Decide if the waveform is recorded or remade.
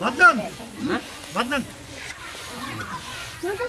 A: remade